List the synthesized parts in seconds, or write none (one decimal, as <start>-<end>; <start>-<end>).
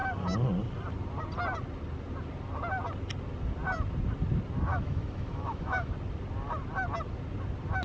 4.7-5.9